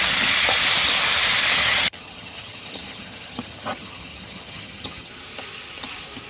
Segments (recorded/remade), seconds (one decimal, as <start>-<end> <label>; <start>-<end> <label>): 0.0-1.6 recorded; 1.6-5.1 remade; 5.1-6.3 recorded